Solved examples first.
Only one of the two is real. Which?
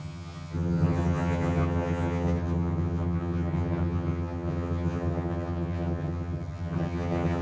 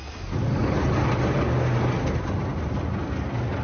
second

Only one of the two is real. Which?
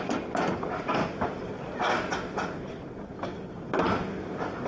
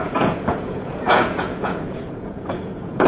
first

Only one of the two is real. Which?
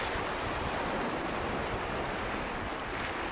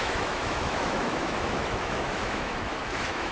first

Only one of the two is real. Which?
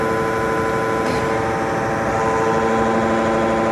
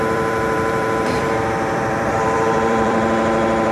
first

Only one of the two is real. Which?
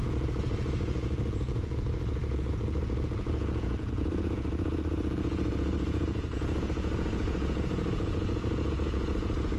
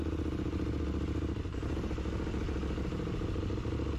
second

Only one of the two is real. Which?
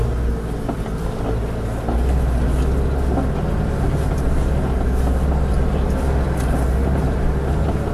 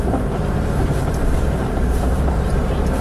first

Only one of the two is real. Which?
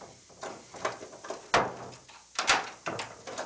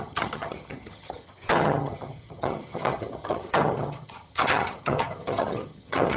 first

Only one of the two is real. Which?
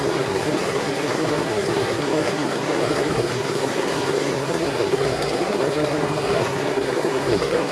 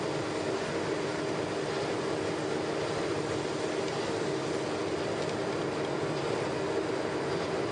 second